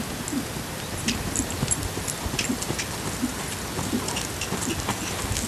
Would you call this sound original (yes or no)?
yes